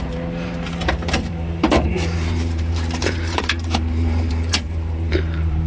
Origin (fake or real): fake